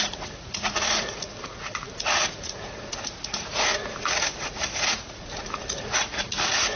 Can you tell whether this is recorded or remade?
remade